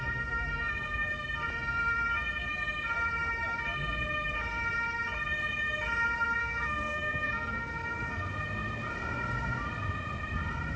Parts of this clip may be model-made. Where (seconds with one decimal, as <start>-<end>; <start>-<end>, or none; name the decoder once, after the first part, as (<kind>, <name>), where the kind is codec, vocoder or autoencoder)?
6.4-8.3 (codec, SNAC)